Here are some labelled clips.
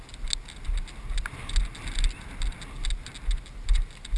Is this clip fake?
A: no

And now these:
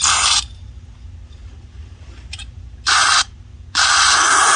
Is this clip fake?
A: no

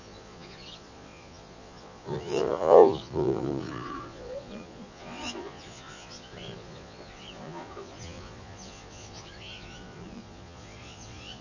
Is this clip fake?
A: yes